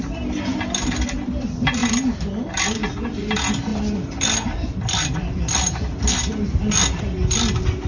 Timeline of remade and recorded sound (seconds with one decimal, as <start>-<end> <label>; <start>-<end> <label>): 0.0-7.9 recorded